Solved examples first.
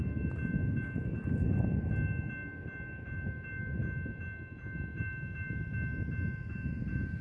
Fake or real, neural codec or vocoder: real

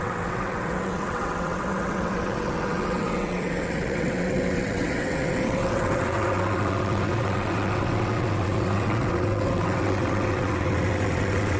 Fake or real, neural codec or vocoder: fake, vocoder, WaveNeXt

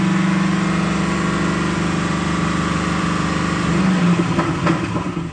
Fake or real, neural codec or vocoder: real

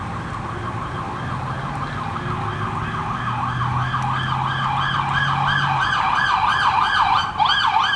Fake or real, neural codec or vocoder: real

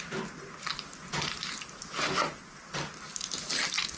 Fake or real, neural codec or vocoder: real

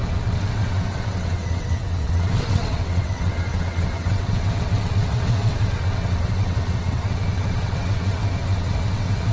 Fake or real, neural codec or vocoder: fake, vocoder, WaveNeXt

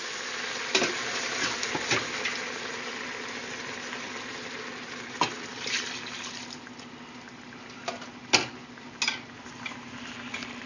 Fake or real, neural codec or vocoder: real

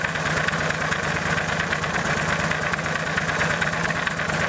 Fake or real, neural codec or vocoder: real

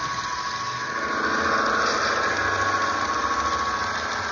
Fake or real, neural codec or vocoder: real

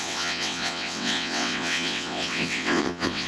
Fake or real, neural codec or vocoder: fake, vocoder, WaveNeXt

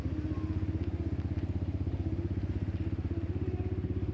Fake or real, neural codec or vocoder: real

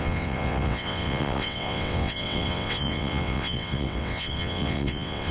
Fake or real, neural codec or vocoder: fake, vocoder, WaveNeXt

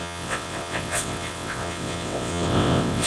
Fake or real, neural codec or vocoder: fake, vocoder, WaveNeXt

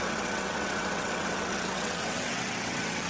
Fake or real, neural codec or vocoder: fake, vocoder, WaveNeXt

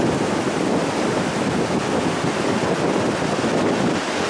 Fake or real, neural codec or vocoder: real